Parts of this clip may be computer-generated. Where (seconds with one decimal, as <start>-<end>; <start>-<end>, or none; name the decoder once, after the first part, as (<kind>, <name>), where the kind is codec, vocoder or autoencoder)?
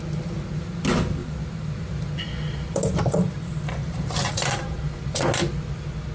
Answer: 1.2-2.0 (vocoder, BigVGAN v2); 3.8-5.0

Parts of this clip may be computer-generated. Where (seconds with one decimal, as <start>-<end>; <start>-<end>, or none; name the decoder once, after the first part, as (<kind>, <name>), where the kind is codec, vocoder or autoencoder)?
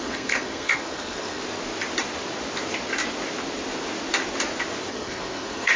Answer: 0.0-1.4 (codec, SNAC); 4.9-5.8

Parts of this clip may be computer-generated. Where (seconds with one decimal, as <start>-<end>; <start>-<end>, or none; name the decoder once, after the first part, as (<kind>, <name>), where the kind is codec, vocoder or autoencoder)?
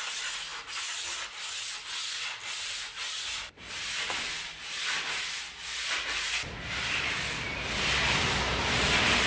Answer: none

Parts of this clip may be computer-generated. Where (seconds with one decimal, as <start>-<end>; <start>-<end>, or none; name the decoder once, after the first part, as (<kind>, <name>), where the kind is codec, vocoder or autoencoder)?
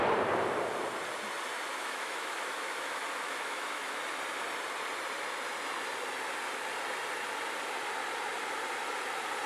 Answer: 1.7-4.0 (autoencoder, DAC-VAE)